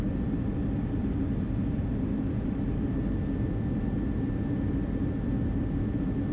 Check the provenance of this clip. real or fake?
real